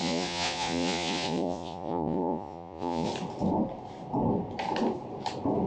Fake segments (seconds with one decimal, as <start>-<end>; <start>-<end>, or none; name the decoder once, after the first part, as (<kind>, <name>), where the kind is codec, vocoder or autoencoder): 0.0-3.1 (vocoder, Vocos)